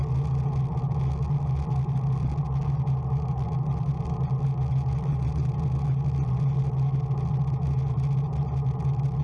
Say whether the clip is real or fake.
real